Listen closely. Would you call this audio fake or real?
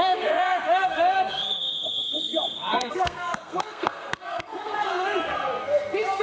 fake